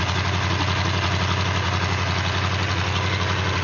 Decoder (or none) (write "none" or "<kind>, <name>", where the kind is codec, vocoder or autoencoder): none